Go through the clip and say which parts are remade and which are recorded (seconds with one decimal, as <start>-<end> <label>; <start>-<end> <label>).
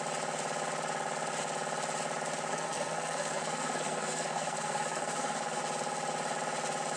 0.0-2.5 recorded; 2.5-5.6 remade; 5.6-7.0 recorded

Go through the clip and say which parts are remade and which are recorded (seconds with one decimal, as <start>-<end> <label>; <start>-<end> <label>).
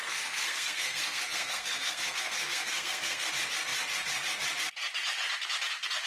0.0-3.3 remade; 3.3-6.1 recorded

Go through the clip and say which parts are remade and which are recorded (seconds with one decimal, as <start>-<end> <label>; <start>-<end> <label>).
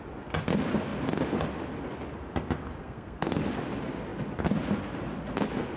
0.0-2.8 recorded; 2.8-3.4 remade; 3.4-5.8 recorded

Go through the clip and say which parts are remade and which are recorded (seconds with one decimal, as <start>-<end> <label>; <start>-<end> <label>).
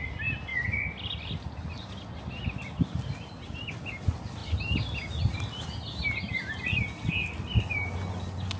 0.0-8.6 recorded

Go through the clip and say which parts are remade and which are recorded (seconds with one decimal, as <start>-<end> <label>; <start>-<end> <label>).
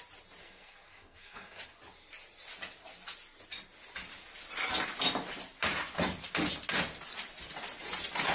0.0-0.4 recorded; 0.4-1.6 remade; 1.6-8.3 recorded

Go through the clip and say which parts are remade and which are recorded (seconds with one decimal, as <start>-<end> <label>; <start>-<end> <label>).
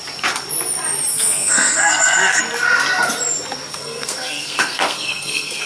0.0-1.1 recorded; 1.1-2.4 remade; 2.4-3.7 recorded; 3.7-5.7 remade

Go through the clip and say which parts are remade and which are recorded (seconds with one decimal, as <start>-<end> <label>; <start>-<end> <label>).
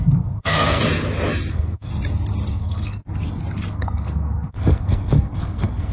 0.0-0.8 remade; 0.8-1.5 recorded; 1.5-1.9 remade; 1.9-2.5 recorded; 2.5-3.0 remade; 3.0-3.7 recorded; 3.7-5.9 remade